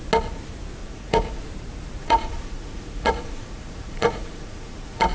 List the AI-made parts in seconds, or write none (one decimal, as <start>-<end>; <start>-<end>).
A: 0.8-1.4; 2.0-5.1